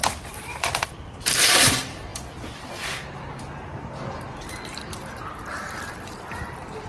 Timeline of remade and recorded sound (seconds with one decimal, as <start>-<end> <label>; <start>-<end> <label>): 0.0-6.9 remade